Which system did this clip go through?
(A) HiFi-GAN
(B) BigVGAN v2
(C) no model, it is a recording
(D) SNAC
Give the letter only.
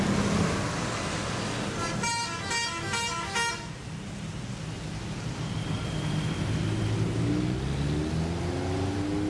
C